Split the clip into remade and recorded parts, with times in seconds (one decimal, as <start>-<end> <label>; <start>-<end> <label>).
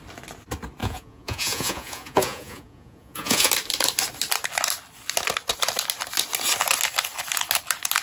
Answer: 0.0-0.8 recorded; 0.8-3.5 remade; 3.5-8.0 recorded